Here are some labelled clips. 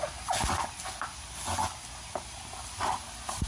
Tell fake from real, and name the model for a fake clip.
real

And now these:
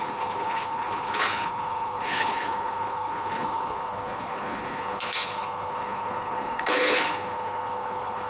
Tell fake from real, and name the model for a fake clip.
fake, codec, HILCodec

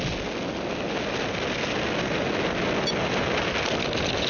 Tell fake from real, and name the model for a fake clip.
real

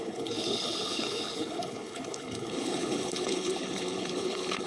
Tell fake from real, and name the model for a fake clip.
fake, codec, HILCodec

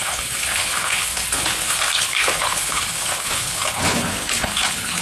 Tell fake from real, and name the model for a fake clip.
fake, codec, HILCodec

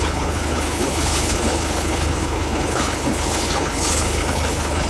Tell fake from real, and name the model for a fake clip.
fake, codec, HILCodec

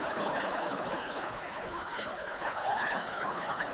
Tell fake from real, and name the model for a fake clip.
fake, codec, HILCodec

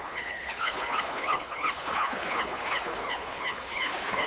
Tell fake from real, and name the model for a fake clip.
fake, codec, HILCodec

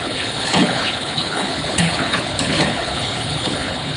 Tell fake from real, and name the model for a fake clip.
fake, codec, HILCodec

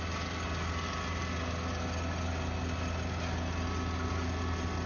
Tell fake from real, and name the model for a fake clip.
real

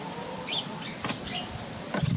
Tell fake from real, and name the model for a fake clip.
real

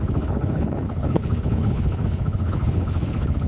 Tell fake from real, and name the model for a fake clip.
fake, codec, HILCodec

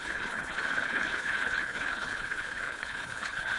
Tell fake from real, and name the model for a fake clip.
fake, codec, HILCodec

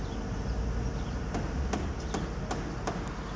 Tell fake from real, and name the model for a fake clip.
real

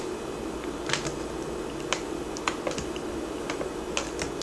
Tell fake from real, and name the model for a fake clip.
real